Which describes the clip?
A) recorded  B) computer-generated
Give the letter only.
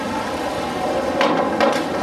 A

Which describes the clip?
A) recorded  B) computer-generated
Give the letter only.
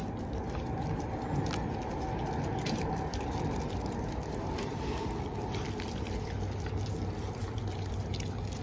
A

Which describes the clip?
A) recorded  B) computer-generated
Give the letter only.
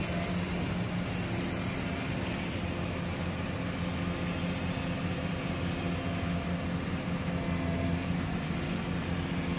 A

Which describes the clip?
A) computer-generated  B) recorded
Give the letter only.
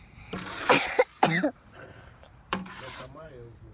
A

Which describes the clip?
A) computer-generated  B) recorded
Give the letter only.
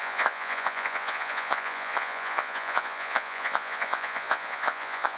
A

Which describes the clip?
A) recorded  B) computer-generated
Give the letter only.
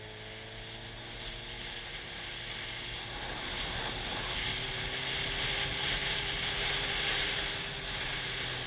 A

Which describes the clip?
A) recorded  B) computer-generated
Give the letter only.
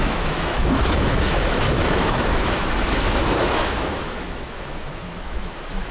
B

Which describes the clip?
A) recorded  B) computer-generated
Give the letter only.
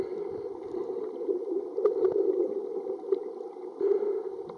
A